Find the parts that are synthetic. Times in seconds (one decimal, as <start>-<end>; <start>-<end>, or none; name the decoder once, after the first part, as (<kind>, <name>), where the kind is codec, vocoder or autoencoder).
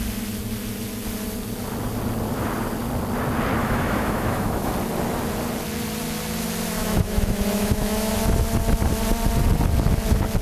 3.6-4.7 (autoencoder, DAC-VAE); 6.8-8.1